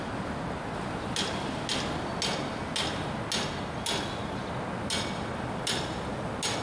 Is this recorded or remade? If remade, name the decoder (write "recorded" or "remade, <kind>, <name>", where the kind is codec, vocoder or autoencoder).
recorded